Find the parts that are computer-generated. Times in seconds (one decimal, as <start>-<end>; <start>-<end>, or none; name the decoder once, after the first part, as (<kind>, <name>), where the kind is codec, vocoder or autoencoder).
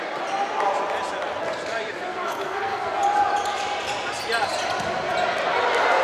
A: 2.1-2.9 (codec, SNAC)